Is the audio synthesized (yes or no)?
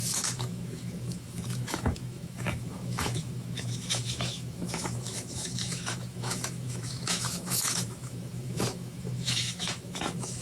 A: yes